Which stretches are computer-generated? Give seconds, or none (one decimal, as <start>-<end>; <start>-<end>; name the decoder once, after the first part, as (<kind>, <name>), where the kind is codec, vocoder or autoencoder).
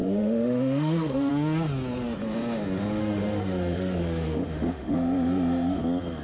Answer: 0.0-1.3 (autoencoder, DAC-VAE); 3.0-5.8